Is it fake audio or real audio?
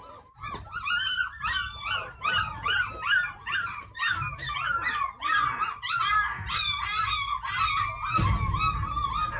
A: real